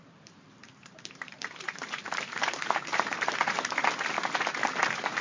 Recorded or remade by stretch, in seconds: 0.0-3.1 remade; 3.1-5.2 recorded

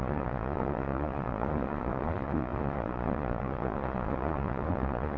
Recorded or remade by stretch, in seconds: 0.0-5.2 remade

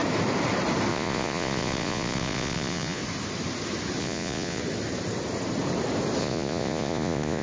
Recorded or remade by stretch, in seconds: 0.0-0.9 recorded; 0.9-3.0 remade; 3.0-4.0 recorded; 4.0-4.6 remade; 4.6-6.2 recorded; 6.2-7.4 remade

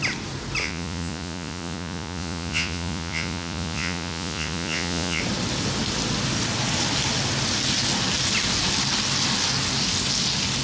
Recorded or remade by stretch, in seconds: 0.0-0.6 recorded; 0.6-5.2 remade; 5.2-10.6 recorded

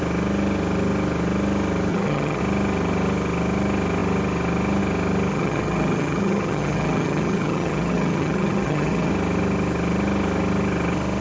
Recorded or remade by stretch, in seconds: 0.0-1.9 recorded; 1.9-2.4 remade; 2.4-5.3 recorded; 5.3-9.1 remade; 9.1-11.2 recorded